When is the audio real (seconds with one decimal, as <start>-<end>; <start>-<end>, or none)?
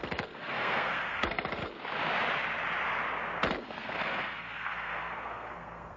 1.6-3.6